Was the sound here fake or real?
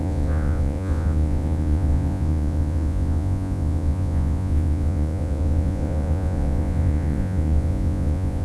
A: fake